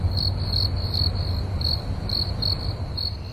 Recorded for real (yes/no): yes